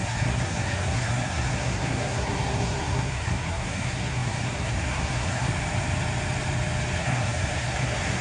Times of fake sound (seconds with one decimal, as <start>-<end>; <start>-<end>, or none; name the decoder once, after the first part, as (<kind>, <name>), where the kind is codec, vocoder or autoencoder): 0.0-5.5 (codec, SNAC); 7.0-8.2